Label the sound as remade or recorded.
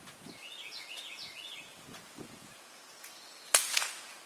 remade